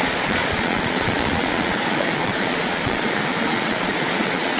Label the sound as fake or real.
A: fake